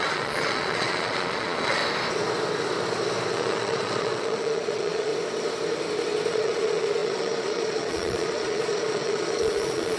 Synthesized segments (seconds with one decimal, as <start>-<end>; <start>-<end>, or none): 0.0-1.8; 3.3-5.1; 6.3-10.0